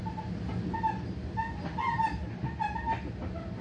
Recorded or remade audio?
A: recorded